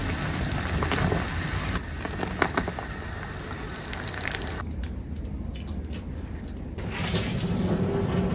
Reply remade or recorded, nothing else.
recorded